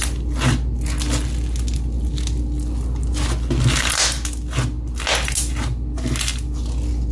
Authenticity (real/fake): real